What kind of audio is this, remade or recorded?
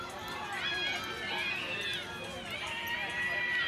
recorded